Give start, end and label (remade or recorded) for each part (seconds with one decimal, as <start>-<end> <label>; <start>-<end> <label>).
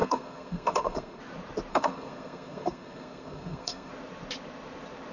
0.0-1.2 remade; 1.2-1.7 recorded; 1.7-3.9 remade; 3.9-5.1 recorded